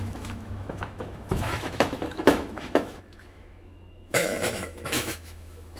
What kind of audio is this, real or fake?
fake